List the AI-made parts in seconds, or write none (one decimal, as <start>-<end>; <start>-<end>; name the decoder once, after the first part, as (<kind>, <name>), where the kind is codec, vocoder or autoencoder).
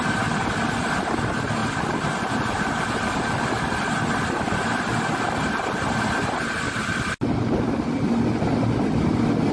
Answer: none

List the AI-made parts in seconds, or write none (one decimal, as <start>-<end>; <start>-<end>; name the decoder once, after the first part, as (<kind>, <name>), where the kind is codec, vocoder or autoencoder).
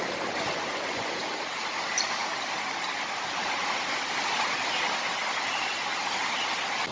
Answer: 0.7-1.2 (vocoder, Vocos)